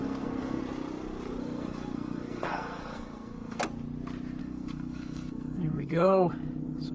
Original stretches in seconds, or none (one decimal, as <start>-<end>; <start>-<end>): 0.6-1.4; 3.6-4.4; 6.3-6.9